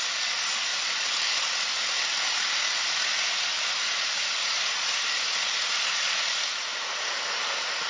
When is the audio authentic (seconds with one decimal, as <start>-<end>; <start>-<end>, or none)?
0.0-7.9